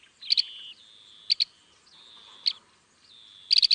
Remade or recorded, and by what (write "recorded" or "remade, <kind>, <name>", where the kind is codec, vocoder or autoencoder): recorded